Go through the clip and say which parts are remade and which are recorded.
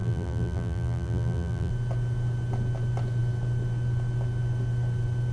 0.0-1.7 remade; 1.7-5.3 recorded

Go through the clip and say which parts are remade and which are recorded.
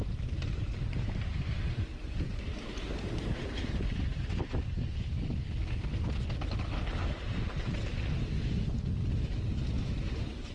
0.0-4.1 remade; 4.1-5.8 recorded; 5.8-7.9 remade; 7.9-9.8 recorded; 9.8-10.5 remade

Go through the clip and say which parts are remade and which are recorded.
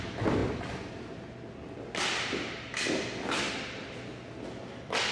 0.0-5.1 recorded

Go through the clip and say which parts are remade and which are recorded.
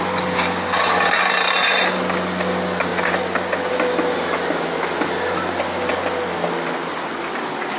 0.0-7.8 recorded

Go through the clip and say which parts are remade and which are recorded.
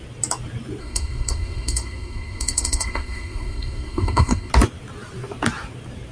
0.0-0.8 recorded; 0.8-4.5 remade; 4.5-6.1 recorded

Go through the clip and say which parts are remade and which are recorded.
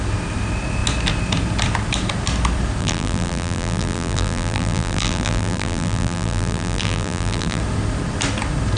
0.0-2.8 recorded; 2.8-7.6 remade; 7.6-8.8 recorded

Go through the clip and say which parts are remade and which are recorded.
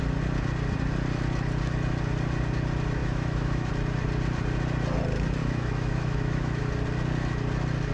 0.0-3.0 recorded; 3.0-3.7 remade; 3.7-5.4 recorded; 5.4-6.6 remade; 6.6-7.9 recorded